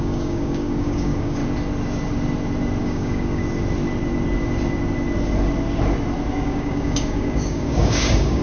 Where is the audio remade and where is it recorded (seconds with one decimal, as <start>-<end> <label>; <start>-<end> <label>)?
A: 0.0-1.4 remade; 1.4-2.8 recorded; 2.8-3.4 remade; 3.4-6.3 recorded; 6.3-8.4 remade